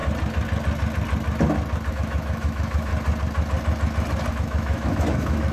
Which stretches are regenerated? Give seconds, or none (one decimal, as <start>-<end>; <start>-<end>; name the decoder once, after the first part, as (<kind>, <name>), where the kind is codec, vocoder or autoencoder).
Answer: 1.9-2.9 (autoencoder, DAC-VAE); 4.3-5.5

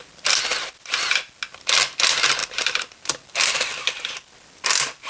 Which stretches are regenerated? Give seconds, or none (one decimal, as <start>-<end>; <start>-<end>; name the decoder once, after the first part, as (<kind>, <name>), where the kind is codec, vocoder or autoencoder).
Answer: none

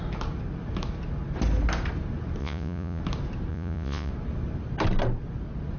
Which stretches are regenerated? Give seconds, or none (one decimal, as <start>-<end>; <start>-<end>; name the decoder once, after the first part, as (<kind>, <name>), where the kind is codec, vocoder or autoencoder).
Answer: 2.4-3.0 (vocoder, Vocos); 3.5-4.1

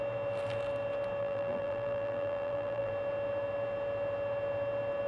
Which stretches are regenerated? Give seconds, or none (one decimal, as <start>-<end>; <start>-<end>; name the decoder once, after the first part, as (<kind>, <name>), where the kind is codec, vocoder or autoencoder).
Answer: 1.2-2.9 (vocoder, BigVGAN v2)

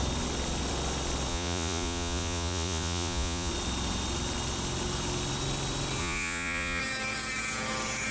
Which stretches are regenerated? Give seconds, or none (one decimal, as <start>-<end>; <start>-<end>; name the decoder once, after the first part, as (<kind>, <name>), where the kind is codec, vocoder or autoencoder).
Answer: 1.3-3.5 (vocoder, Vocos); 6.0-6.8

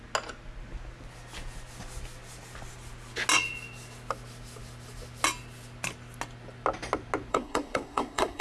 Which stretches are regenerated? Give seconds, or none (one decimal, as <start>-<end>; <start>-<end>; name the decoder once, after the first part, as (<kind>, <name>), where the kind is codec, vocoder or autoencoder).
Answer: 7.3-8.4 (codec, SNAC)

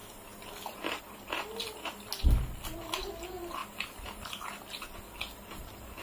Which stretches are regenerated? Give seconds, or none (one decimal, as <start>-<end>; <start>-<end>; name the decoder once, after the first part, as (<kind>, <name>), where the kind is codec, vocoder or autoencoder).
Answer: none